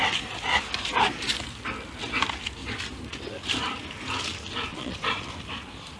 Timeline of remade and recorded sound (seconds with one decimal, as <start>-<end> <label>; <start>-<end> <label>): 0.0-4.7 recorded; 4.7-5.3 remade; 5.3-6.0 recorded